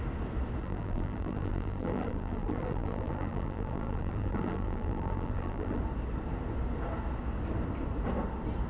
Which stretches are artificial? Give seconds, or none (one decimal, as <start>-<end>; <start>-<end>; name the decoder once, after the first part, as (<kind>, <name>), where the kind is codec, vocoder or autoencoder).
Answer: 0.6-5.8 (vocoder, BigVGAN v2)

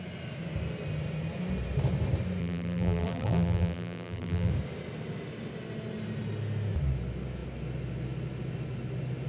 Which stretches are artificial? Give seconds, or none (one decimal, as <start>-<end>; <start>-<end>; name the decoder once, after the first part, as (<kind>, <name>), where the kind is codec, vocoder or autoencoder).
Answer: 2.4-4.5 (vocoder, BigVGAN v2)